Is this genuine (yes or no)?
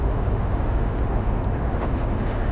no